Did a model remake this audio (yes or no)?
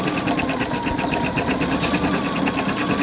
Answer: no